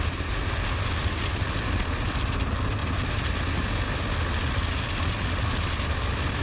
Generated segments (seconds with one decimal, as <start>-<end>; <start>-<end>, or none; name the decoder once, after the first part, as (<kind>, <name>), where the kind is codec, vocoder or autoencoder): none